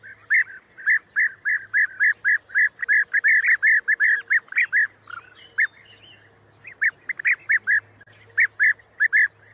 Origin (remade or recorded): recorded